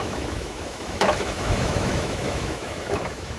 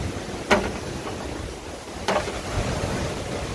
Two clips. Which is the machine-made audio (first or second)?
first